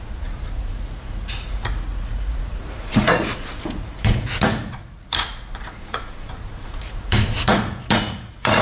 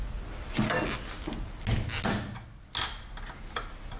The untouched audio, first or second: second